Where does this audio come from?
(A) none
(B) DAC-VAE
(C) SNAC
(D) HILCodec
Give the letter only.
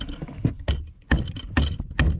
A